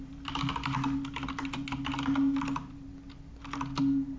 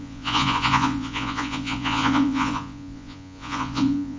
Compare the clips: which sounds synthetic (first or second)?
second